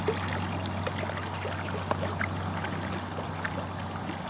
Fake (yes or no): no